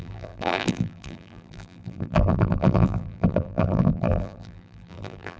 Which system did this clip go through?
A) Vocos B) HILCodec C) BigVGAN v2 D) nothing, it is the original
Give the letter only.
C